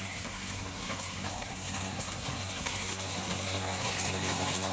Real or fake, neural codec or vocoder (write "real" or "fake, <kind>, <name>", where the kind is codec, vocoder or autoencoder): fake, codec, SNAC